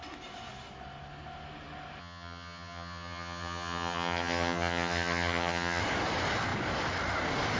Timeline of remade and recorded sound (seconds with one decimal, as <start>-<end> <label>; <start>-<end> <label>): 0.0-2.0 recorded; 2.0-5.8 remade; 5.8-7.6 recorded